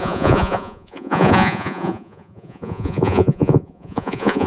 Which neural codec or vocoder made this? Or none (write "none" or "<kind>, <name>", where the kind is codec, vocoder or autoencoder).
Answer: vocoder, Vocos